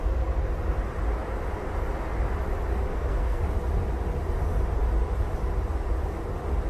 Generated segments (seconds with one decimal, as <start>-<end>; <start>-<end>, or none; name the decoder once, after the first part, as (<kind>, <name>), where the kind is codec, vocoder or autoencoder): 2.9-3.4 (codec, SNAC)